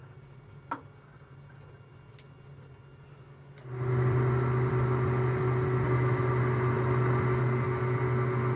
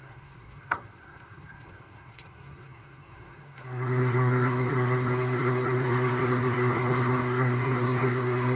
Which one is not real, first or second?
second